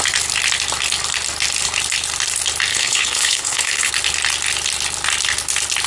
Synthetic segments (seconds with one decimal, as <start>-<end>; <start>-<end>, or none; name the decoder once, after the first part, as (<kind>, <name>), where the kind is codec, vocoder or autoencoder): 2.7-3.9 (codec, HILCodec)